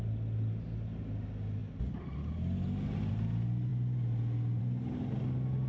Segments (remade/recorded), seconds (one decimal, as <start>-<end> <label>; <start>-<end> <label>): 0.0-5.7 recorded